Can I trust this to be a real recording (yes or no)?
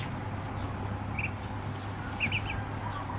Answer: yes